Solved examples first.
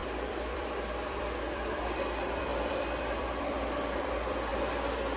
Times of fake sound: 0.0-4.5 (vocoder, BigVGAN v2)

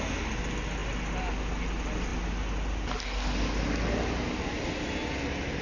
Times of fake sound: none

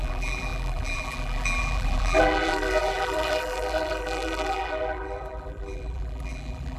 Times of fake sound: 0.0-6.8 (vocoder, BigVGAN v2)